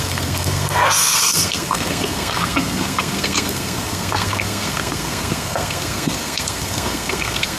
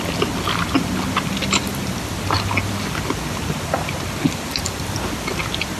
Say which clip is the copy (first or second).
first